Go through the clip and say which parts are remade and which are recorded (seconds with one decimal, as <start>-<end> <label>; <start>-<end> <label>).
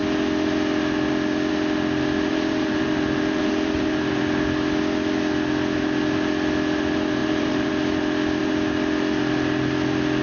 0.0-2.3 recorded; 2.3-4.1 remade; 4.1-7.2 recorded; 7.2-7.7 remade; 7.7-10.2 recorded